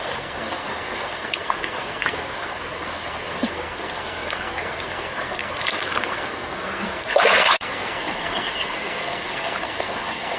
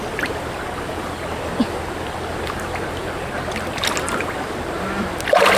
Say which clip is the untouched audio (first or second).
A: second